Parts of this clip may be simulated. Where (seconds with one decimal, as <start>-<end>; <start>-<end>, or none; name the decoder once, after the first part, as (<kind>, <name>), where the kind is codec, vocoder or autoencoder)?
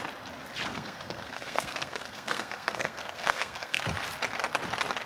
0.7-3.8 (codec, SNAC)